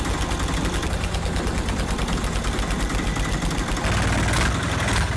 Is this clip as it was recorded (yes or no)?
yes